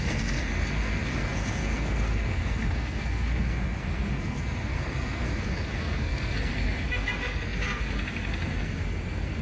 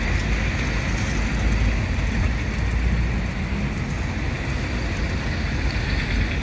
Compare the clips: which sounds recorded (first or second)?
second